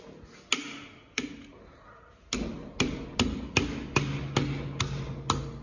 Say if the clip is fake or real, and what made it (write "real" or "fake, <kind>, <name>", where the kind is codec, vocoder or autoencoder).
real